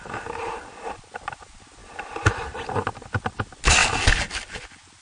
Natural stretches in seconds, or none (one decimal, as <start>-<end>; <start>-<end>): 0.0-5.0